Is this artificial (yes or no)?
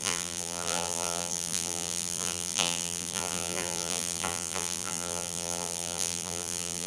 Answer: yes